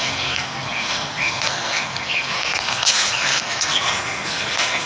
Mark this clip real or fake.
fake